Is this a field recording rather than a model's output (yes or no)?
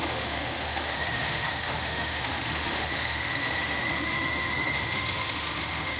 no